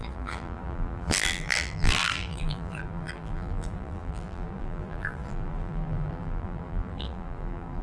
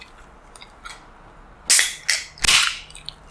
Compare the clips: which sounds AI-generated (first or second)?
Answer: first